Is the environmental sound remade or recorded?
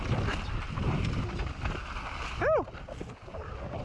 recorded